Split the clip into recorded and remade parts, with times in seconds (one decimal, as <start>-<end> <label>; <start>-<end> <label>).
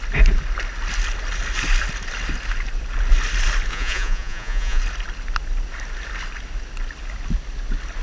0.0-3.7 recorded; 3.7-4.8 remade; 4.8-8.0 recorded